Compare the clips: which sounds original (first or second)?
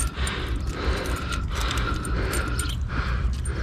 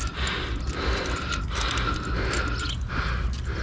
second